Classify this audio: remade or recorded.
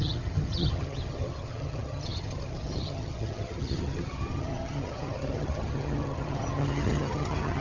remade